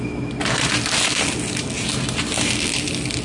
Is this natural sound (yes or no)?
yes